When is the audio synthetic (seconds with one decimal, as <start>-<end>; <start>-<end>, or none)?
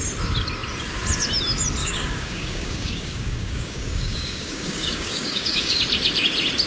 1.8-5.8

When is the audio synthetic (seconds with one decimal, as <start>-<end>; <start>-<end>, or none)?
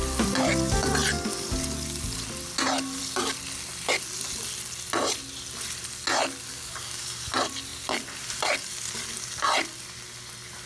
6.5-7.3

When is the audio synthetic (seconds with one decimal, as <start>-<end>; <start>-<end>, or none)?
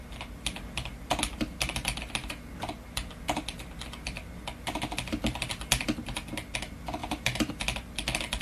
7.0-7.5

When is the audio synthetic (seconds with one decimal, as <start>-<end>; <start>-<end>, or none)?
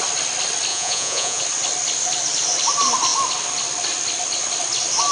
0.7-1.4